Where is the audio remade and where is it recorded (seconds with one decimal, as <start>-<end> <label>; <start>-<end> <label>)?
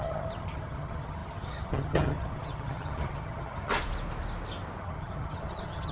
0.0-3.7 remade; 3.7-4.8 recorded; 4.8-5.9 remade